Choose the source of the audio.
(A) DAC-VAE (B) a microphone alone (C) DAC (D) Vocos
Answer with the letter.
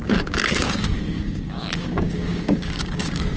C